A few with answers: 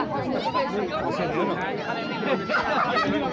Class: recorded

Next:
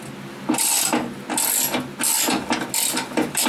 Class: recorded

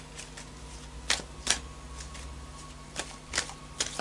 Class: recorded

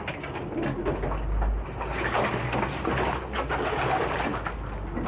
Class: recorded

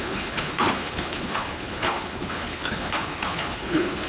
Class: remade